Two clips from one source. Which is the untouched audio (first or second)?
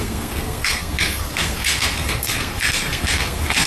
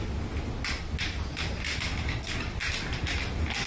second